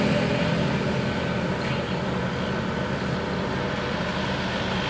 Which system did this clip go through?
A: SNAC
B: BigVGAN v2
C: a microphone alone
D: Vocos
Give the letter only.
C